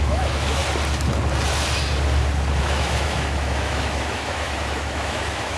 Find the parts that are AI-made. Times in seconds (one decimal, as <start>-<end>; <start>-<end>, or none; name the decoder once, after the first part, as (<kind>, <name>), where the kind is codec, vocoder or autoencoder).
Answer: 0.0-0.6 (autoencoder, DAC-VAE); 2.6-5.6